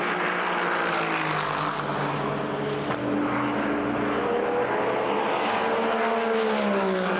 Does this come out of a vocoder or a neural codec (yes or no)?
no